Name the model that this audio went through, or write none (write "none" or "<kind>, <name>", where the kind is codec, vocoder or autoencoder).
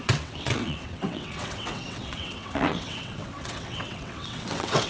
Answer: vocoder, WaveNeXt